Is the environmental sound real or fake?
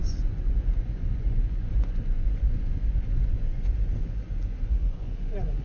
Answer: fake